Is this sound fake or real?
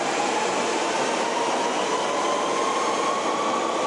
real